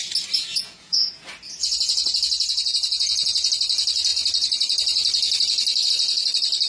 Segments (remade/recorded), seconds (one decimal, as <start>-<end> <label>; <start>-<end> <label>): 0.0-0.5 recorded; 0.5-1.1 remade; 1.1-1.6 recorded; 1.6-3.5 remade; 3.5-6.7 recorded